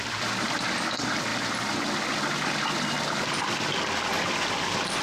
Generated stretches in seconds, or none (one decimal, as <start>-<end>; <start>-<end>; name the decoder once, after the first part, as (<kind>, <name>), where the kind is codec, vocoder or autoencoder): none